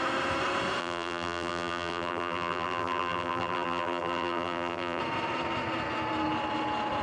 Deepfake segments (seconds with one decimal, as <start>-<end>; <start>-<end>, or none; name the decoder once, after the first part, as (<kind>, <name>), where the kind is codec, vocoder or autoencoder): 0.8-5.0 (vocoder, BigVGAN v2)